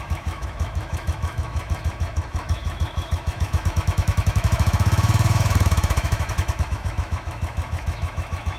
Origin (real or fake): fake